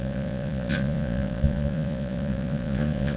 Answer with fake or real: fake